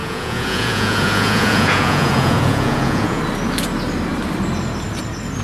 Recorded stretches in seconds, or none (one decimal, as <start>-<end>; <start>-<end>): 3.2-5.4